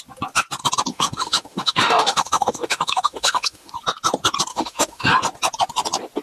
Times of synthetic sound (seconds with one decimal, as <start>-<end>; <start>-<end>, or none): 0.9-3.7; 4.5-5.1

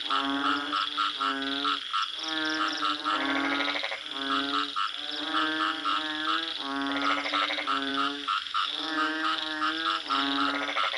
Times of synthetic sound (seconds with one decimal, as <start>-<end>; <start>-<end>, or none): 7.9-9.7

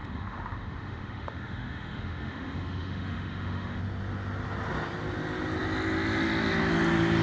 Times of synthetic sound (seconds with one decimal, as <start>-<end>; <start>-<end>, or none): 0.0-3.8

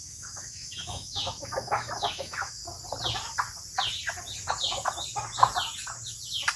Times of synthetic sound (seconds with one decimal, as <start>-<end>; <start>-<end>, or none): 0.0-2.6

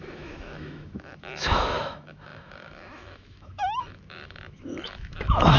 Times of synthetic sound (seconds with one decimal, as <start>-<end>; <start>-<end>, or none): 0.0-5.6

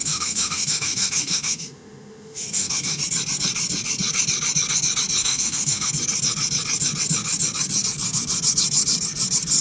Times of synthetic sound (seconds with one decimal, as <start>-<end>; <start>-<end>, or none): 0.0-3.0; 5.2-5.9

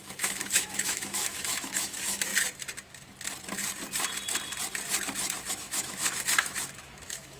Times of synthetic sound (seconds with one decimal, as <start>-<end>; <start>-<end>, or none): 0.0-2.3; 5.5-7.4

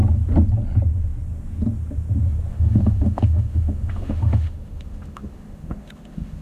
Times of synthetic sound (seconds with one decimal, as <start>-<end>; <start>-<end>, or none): 2.5-6.4